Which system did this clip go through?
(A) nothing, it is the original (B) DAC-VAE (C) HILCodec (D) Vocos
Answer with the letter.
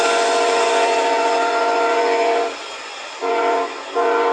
D